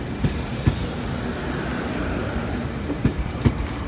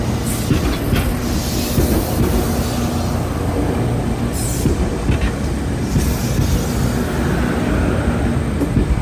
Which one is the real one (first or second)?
second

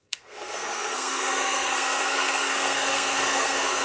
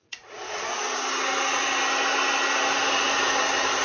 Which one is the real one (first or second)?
second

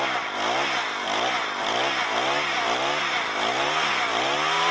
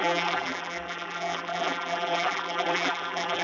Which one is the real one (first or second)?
first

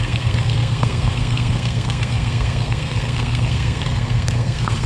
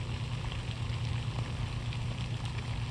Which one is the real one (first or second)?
second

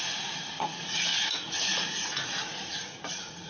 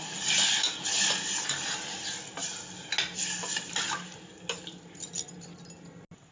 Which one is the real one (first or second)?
second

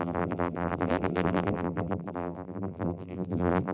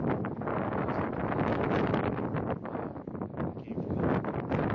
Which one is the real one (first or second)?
second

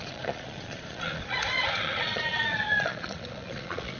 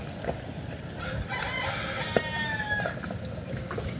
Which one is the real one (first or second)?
second